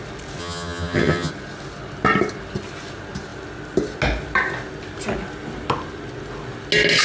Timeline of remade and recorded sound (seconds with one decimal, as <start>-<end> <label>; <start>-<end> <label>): 0.0-0.4 recorded; 0.4-1.3 remade; 1.3-7.0 recorded